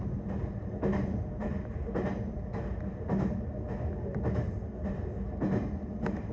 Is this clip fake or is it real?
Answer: real